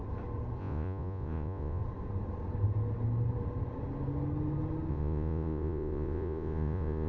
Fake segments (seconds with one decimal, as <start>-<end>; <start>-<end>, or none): 0.6-1.8; 4.9-7.1